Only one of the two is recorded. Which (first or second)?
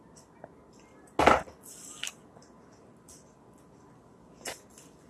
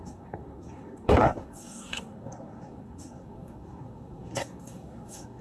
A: first